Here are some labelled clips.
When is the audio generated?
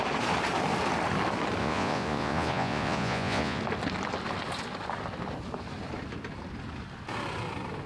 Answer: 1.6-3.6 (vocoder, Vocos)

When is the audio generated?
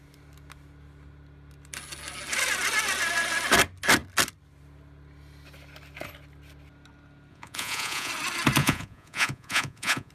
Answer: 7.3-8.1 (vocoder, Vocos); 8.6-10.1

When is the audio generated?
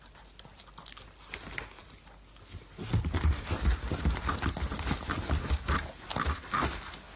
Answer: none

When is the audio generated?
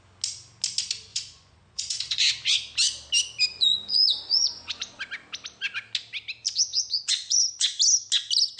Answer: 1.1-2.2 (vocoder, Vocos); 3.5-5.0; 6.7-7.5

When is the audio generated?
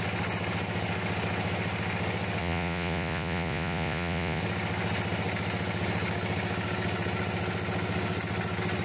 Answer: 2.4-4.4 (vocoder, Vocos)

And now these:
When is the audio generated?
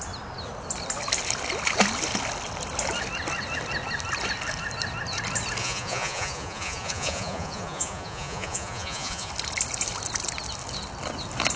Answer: 5.6-9.3 (vocoder, Vocos)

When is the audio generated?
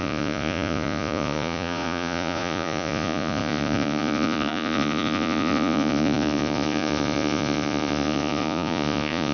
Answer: 0.0-9.3 (vocoder, Vocos)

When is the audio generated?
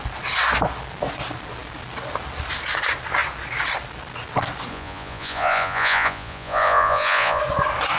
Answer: 4.7-7.4 (vocoder, Vocos)